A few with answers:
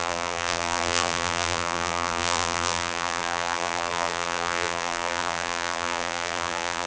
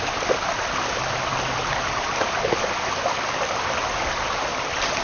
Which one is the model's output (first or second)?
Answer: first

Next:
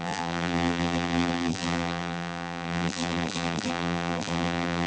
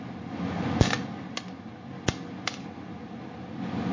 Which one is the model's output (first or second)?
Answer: first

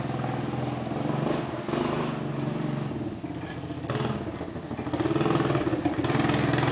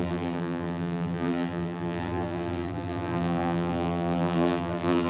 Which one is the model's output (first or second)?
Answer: second